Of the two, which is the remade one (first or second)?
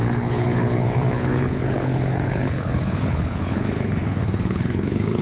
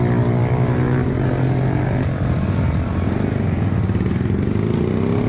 first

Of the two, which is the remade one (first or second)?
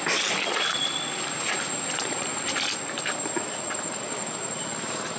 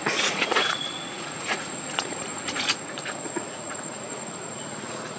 second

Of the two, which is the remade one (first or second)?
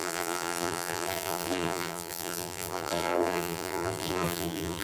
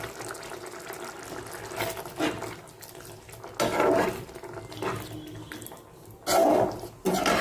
first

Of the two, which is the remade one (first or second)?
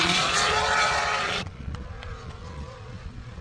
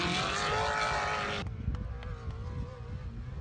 first